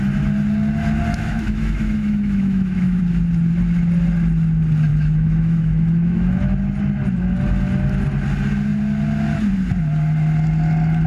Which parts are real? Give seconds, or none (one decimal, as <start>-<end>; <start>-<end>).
0.0-1.1; 3.0-4.9; 6.3-11.1